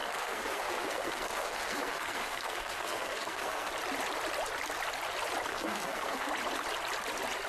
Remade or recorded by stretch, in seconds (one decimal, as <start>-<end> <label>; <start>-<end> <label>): 0.0-3.7 remade; 3.7-5.5 recorded; 5.5-6.3 remade; 6.3-7.5 recorded

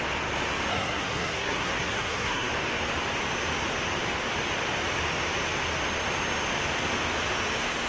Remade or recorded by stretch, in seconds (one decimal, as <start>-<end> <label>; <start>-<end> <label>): 0.0-0.7 recorded; 0.7-2.5 remade; 2.5-7.9 recorded